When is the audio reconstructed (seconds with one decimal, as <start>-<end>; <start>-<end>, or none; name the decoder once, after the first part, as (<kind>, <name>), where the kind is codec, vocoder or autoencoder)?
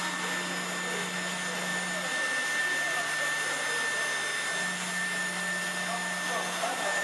none